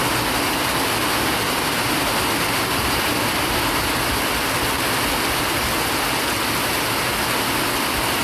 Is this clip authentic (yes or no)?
yes